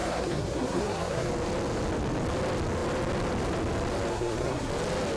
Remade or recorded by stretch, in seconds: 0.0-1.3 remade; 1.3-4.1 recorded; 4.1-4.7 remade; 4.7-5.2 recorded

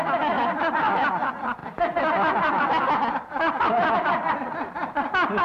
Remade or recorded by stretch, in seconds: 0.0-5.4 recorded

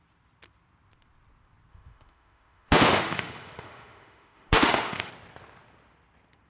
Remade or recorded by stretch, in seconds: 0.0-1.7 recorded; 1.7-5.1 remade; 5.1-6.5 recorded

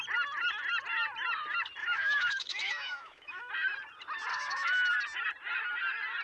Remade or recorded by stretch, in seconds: 0.0-1.8 recorded; 1.8-3.5 remade; 3.5-4.3 recorded; 4.3-4.9 remade; 4.9-6.2 recorded

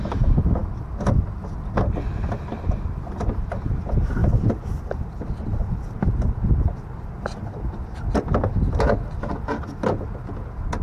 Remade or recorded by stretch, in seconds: 0.0-10.8 recorded

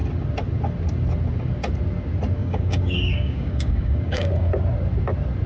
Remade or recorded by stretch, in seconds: 0.0-2.4 recorded; 2.4-4.5 remade; 4.5-5.5 recorded